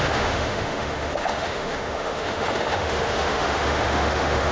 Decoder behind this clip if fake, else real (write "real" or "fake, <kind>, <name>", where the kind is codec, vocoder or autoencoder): fake, autoencoder, DAC-VAE